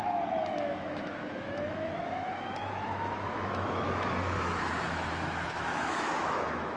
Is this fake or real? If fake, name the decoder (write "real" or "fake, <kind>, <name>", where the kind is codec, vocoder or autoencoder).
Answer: fake, autoencoder, DAC-VAE